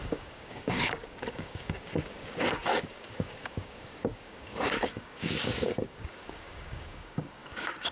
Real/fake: fake